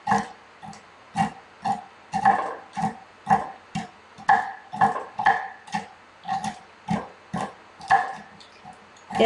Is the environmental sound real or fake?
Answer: real